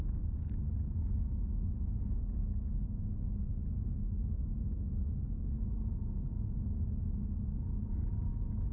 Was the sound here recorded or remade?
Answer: remade